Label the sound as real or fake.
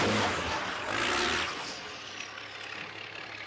real